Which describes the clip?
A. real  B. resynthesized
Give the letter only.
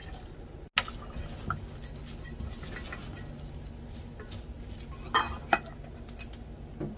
A